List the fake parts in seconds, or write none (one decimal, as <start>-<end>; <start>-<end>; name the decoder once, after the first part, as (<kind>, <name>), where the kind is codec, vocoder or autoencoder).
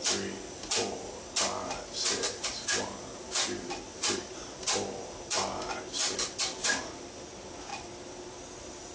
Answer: none